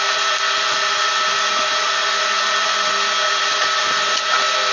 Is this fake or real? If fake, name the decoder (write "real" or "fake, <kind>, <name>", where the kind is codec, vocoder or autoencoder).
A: real